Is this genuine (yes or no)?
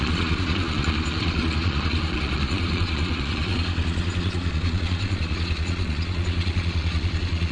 no